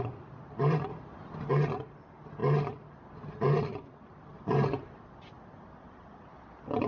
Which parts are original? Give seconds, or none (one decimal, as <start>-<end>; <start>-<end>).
0.0-6.9